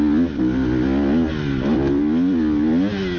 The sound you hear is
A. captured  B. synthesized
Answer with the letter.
A